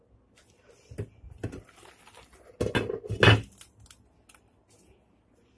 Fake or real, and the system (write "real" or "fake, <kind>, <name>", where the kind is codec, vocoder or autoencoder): real